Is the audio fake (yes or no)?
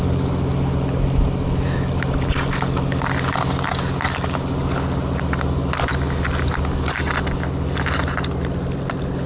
no